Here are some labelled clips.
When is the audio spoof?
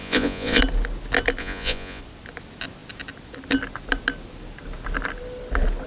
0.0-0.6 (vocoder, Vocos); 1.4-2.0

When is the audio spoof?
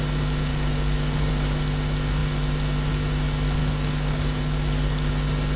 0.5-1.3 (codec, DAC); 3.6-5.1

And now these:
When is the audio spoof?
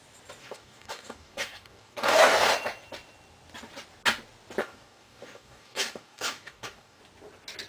0.4-2.5 (codec, DAC); 4.6-7.0